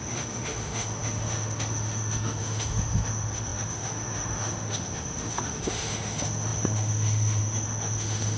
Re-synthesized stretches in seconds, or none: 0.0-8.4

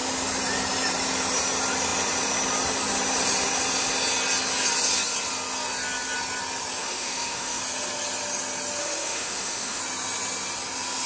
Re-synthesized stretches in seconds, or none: 6.8-7.6; 8.8-9.8

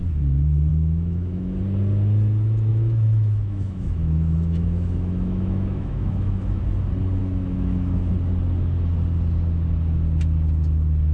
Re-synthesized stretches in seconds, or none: 0.7-1.6; 2.7-6.6; 7.2-8.1

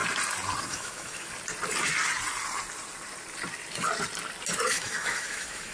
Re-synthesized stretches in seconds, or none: 0.6-1.3; 4.7-5.7